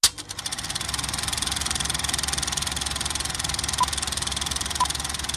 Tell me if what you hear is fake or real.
real